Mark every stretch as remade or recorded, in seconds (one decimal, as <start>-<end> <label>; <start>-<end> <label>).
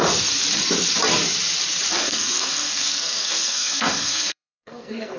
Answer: 0.0-1.9 recorded; 1.9-5.2 remade